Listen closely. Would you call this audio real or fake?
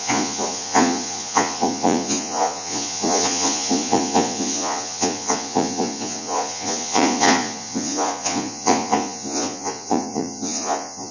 fake